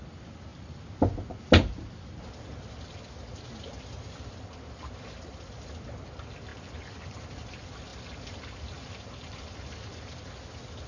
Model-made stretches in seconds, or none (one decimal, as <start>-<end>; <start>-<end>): none